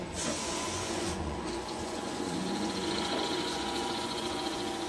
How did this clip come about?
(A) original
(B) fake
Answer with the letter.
B